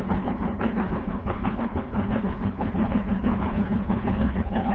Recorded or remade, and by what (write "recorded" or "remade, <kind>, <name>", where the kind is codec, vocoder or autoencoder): remade, codec, HILCodec